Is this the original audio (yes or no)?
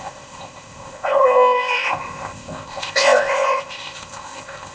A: no